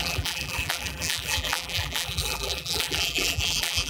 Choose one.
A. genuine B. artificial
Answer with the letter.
B